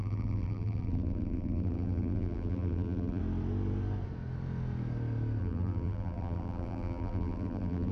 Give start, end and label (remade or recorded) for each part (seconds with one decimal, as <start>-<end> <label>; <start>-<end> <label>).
0.0-3.2 remade; 3.2-5.4 recorded; 5.4-7.9 remade